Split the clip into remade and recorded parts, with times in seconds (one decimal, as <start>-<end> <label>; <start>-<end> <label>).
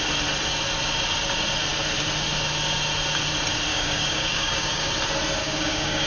0.0-3.7 recorded; 3.7-4.9 remade; 4.9-5.4 recorded; 5.4-6.1 remade